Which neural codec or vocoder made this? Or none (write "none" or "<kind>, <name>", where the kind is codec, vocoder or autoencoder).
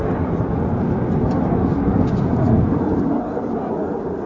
none